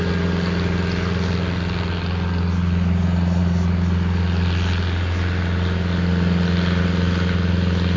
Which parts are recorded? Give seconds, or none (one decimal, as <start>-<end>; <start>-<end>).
0.0-8.0